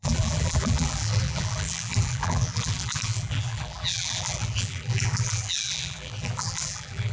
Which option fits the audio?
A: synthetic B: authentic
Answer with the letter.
A